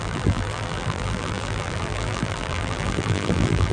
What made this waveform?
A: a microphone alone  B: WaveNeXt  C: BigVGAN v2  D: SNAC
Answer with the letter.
C